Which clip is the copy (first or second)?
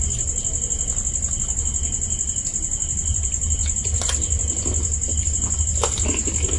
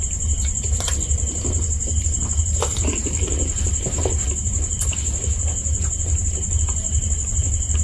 second